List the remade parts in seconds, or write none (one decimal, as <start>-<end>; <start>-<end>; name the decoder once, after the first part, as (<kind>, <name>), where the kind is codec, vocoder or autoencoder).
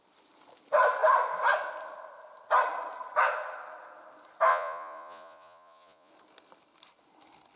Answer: 4.5-6.1 (vocoder, Vocos)